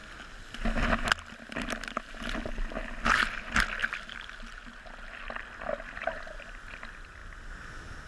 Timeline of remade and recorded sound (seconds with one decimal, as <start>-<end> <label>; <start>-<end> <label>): 0.0-8.1 recorded